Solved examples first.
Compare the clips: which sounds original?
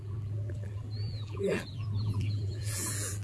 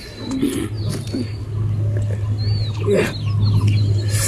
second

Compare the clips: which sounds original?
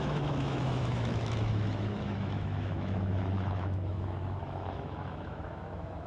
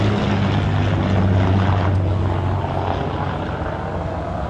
second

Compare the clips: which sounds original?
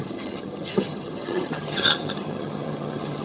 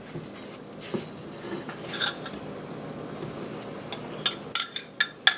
second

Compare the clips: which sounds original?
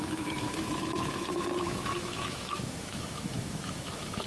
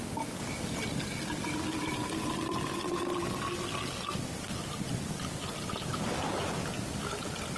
second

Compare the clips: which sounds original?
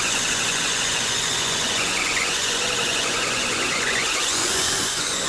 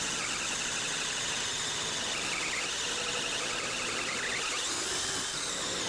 second